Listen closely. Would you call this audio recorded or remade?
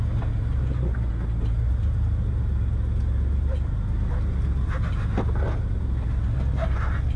recorded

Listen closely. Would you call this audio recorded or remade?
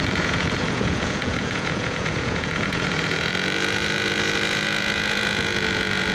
remade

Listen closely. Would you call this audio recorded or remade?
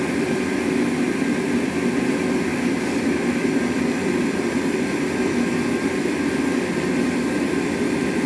recorded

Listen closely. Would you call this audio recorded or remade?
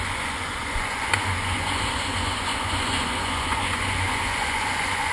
remade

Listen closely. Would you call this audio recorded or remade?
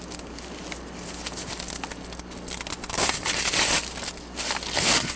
recorded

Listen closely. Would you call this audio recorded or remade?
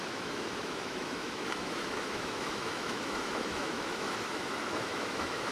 remade